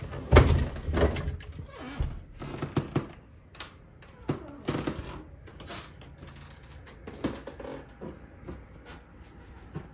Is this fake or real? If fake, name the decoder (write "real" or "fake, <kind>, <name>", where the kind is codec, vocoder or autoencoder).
real